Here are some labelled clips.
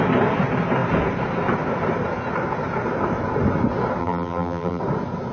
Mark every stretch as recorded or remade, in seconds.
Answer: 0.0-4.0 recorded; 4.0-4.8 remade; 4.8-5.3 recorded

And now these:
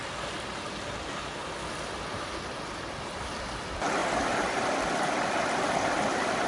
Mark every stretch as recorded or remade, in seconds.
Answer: 0.0-6.5 recorded

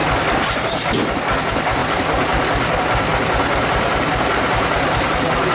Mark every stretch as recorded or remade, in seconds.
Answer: 0.0-5.5 recorded

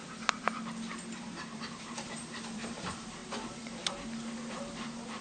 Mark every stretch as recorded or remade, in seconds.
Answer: 0.0-1.2 recorded; 1.2-3.2 remade; 3.2-4.5 recorded; 4.5-5.2 remade

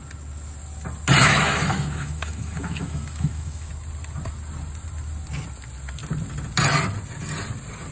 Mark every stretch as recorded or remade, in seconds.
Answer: 0.0-1.2 recorded; 1.2-3.7 remade; 3.7-7.9 recorded

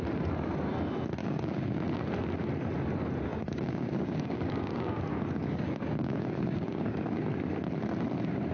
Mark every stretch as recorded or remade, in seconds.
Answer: 0.0-1.2 recorded; 1.2-2.0 remade; 2.0-3.3 recorded; 3.3-7.2 remade; 7.2-8.5 recorded

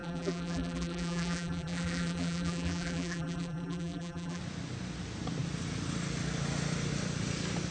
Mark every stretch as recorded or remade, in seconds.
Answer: 0.0-4.4 remade; 4.4-7.7 recorded

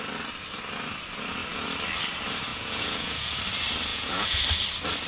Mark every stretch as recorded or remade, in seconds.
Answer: 0.0-2.5 recorded; 2.5-3.4 remade; 3.4-3.9 recorded; 3.9-4.4 remade; 4.4-5.1 recorded